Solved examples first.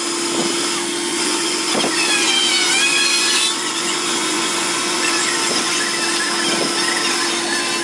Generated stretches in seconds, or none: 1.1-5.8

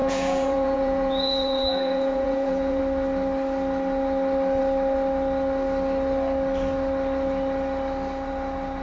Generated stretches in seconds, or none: 0.0-2.8

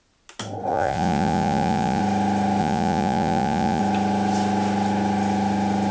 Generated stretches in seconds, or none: 0.7-2.0; 2.6-3.8

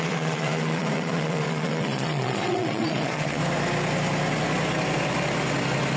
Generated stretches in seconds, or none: 0.0-3.4

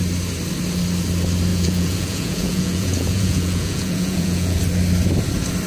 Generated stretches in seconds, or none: 1.5-4.6

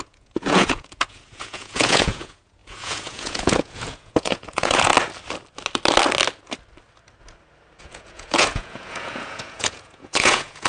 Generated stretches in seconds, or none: 0.0-4.9; 7.8-10.7

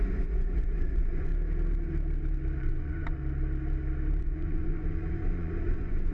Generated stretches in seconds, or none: 0.0-1.3; 2.6-3.2; 4.2-6.1

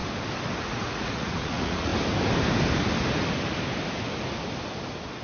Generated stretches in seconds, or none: 0.6-1.9